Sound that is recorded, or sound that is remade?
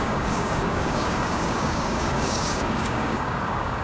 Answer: remade